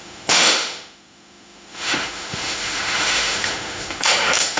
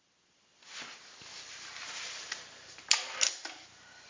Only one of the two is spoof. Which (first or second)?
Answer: first